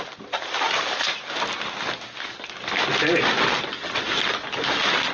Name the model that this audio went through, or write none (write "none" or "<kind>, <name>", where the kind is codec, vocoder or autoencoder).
none